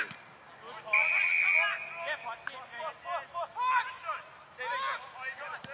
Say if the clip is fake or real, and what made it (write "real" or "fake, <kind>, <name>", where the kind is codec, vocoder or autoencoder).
real